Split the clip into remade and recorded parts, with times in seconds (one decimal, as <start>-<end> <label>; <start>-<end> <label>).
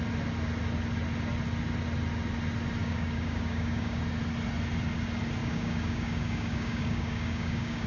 0.0-2.8 recorded; 2.8-4.0 remade; 4.0-5.4 recorded; 5.4-7.9 remade